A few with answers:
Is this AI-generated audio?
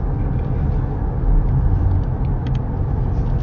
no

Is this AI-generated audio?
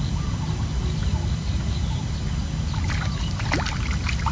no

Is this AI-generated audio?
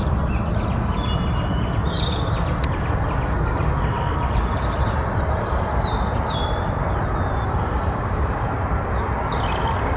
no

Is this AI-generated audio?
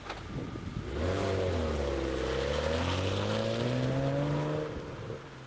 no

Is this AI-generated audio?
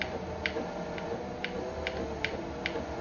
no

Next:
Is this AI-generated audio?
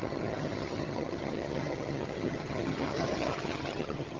yes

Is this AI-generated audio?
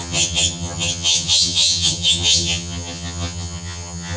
yes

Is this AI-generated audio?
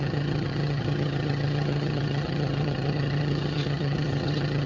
yes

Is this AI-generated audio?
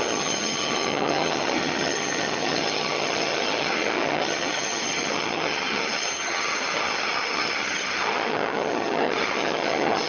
yes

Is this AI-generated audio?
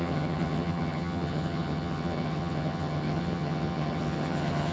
yes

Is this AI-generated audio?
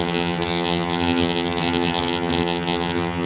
yes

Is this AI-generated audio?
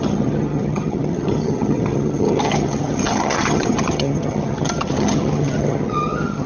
yes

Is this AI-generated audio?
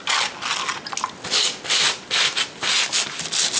no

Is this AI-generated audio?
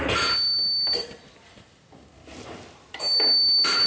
no